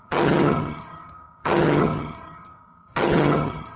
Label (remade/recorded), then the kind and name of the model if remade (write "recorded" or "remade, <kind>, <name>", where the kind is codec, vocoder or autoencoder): remade, vocoder, HiFi-GAN